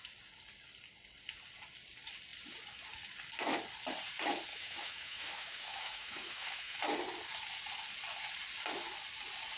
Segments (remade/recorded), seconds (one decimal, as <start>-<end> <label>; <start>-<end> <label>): 0.0-4.5 recorded; 4.5-6.8 remade; 6.8-9.6 recorded